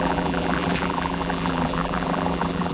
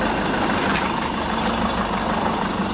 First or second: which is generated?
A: first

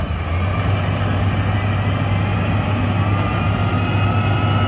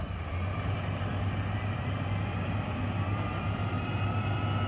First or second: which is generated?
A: second